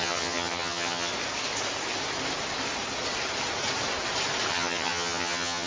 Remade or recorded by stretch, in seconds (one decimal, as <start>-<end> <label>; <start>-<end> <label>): 0.0-1.1 remade; 1.1-4.5 recorded; 4.5-5.7 remade